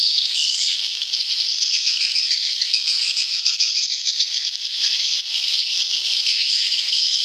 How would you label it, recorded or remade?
remade